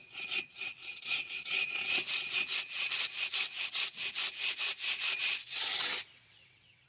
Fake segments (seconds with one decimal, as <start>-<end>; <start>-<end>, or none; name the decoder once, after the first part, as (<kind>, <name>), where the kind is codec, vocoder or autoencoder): 0.0-4.4 (vocoder, WaveNeXt); 5.2-6.9